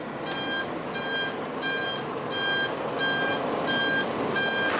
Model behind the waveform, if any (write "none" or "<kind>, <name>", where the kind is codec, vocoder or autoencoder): none